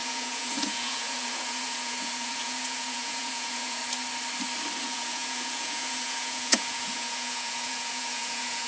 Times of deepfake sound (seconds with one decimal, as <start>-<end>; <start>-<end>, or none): 0.0-3.8; 4.8-8.7